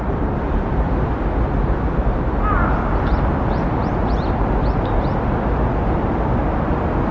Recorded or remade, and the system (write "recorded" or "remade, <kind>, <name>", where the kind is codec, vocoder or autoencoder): recorded